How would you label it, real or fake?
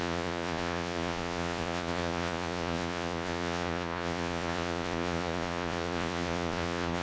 fake